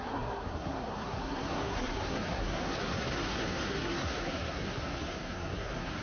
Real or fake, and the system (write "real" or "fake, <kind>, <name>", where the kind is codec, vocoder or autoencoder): fake, codec, SNAC